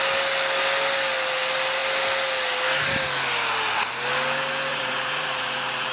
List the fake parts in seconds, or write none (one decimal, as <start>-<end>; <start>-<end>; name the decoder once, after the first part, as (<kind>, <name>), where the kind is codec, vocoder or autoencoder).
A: 4.7-5.9 (vocoder, Vocos)